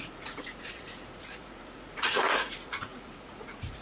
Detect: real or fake fake